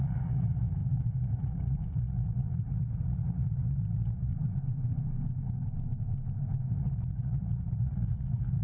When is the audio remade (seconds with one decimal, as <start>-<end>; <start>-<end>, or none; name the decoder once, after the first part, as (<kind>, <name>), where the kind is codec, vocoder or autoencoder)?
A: 0.0-4.3 (vocoder, Vocos); 6.7-8.6